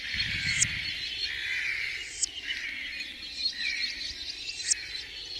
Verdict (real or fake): real